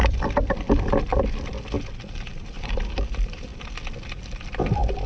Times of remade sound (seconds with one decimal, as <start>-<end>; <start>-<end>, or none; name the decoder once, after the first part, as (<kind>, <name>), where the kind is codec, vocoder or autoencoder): 0.0-0.8 (vocoder, BigVGAN v2); 2.3-3.7